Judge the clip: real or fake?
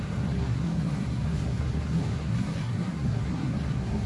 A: fake